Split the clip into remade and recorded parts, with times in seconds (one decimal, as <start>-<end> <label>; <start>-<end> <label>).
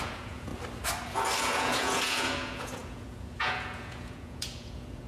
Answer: 0.0-0.5 remade; 0.5-1.4 recorded; 1.4-5.1 remade